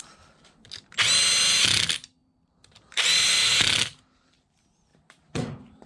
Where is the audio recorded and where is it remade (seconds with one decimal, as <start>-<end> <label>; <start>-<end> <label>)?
0.0-2.2 recorded; 2.2-3.6 remade; 3.6-4.9 recorded; 4.9-5.9 remade